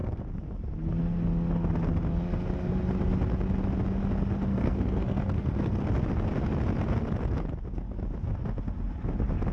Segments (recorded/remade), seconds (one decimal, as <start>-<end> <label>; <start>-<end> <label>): 0.0-4.5 recorded; 4.5-5.8 remade; 5.8-9.5 recorded